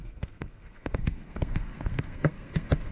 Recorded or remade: remade